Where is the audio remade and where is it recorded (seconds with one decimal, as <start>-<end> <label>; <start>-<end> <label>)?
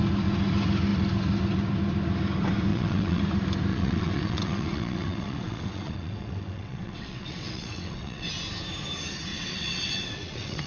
0.0-2.7 recorded; 2.7-3.2 remade; 3.2-3.7 recorded; 3.7-8.3 remade; 8.3-9.3 recorded; 9.3-10.7 remade